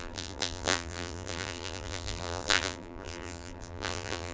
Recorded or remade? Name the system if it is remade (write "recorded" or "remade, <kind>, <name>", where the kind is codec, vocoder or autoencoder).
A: remade, vocoder, BigVGAN v2